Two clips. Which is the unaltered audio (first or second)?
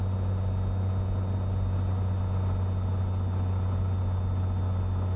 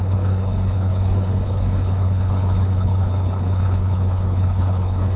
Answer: first